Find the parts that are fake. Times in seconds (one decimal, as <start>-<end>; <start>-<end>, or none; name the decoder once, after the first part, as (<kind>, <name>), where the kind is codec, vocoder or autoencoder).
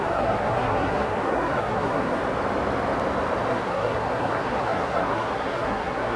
0.0-2.2 (codec, SNAC); 3.5-6.2